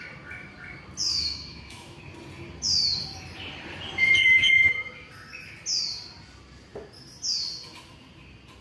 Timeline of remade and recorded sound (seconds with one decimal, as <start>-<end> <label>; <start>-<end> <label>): 0.0-1.1 recorded; 1.1-2.0 remade; 2.0-4.2 recorded; 4.2-4.9 remade; 4.9-8.6 recorded